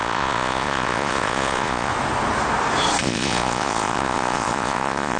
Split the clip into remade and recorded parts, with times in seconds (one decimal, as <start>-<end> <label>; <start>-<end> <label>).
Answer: 0.0-1.9 remade; 1.9-3.0 recorded; 3.0-5.2 remade